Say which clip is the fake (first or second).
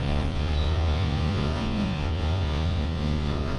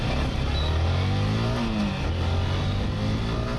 first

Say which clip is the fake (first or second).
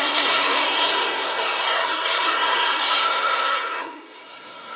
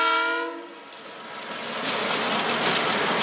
first